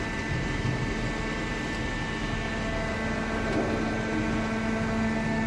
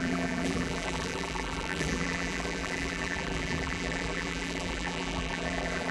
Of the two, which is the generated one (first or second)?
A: second